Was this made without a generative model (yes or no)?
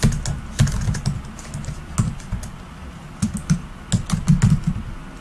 yes